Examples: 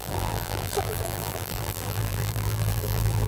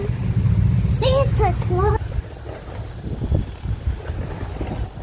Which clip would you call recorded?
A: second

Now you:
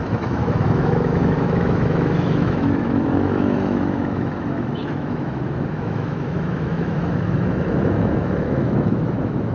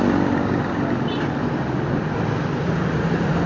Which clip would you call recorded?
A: second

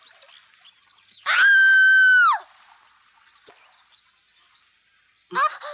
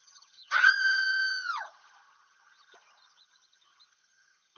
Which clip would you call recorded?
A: first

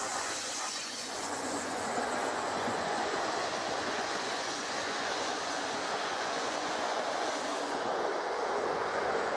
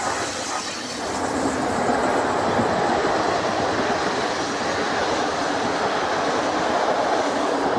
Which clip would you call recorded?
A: second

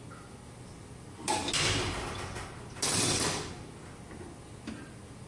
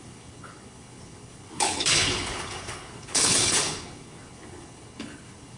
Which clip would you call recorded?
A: first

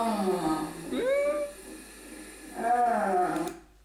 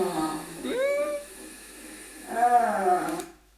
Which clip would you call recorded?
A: first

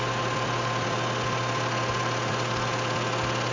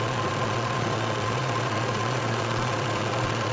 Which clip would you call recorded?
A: first